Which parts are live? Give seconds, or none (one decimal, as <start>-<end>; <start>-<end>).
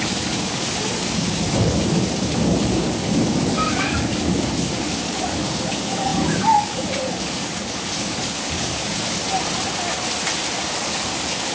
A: 9.2-10.6